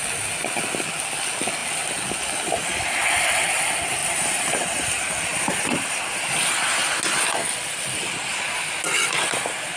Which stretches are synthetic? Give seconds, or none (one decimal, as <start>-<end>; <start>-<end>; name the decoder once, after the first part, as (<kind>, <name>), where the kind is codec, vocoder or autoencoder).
4.0-5.0 (vocoder, BigVGAN v2)